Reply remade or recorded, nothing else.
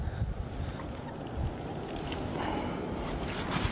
recorded